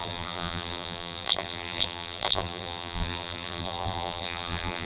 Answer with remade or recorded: remade